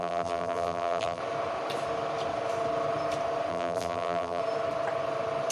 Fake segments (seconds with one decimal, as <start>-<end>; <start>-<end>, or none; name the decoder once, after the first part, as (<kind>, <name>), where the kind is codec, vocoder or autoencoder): 0.0-1.2 (vocoder, BigVGAN v2); 3.5-4.4